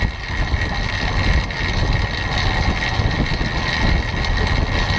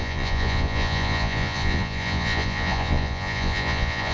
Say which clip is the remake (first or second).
second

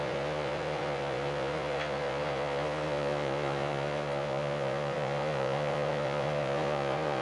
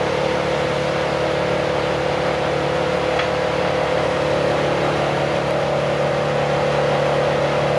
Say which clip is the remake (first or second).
first